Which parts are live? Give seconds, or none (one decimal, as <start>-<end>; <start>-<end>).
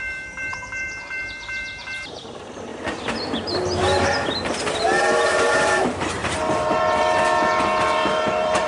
2.7-5.0